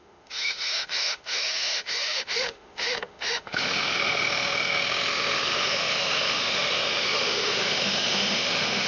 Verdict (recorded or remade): remade